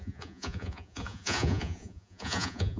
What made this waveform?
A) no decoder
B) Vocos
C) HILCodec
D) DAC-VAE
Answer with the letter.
B